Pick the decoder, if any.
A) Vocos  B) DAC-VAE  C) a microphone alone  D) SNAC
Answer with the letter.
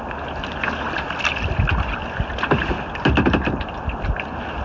C